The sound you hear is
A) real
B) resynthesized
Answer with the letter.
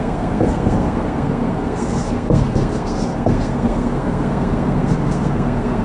B